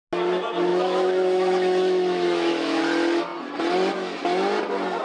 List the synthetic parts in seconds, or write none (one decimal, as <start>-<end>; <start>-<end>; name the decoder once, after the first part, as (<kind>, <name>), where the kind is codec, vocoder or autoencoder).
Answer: 0.7-2.8 (autoencoder, DAC-VAE)